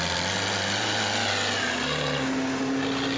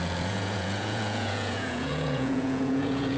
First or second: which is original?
first